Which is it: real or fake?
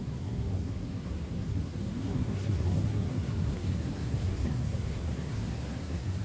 fake